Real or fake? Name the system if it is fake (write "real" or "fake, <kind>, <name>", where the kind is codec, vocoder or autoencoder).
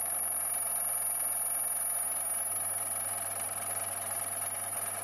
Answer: real